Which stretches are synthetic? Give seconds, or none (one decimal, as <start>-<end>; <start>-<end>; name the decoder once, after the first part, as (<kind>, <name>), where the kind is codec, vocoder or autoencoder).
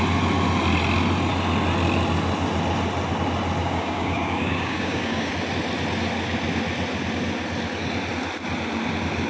3.6-5.3 (codec, DAC)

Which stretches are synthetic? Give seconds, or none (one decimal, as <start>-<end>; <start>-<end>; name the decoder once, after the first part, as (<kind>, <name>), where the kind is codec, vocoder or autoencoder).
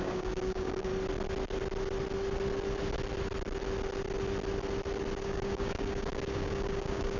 0.0-0.9 (codec, DAC); 5.2-7.2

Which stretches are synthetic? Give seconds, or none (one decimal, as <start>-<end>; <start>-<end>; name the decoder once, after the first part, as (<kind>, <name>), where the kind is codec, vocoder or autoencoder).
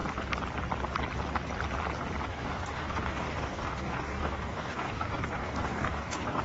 2.3-6.4 (codec, DAC)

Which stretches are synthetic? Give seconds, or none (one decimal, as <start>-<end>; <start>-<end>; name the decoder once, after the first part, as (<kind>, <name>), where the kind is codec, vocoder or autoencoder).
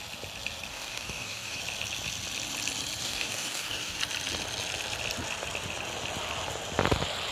0.7-1.6 (codec, DAC); 3.0-4.0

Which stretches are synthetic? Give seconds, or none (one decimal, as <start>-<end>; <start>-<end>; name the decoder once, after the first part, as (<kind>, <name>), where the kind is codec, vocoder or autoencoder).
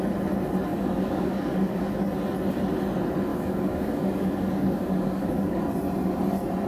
0.7-1.9 (codec, DAC); 3.3-5.6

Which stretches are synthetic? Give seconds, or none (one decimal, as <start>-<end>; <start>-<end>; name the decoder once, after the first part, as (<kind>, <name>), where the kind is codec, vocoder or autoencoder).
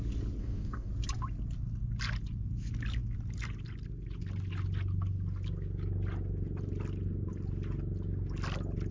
0.4-0.9 (codec, DAC)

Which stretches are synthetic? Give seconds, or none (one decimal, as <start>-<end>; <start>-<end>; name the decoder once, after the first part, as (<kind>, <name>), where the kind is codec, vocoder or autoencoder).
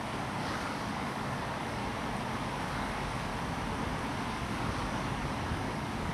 0.0-1.8 (codec, DAC); 2.6-3.3; 4.3-6.1